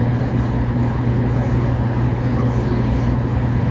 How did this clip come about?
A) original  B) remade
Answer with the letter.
B